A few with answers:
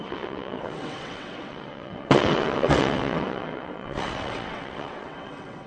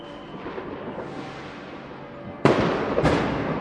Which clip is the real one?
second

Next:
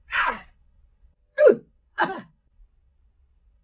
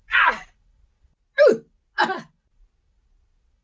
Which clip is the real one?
second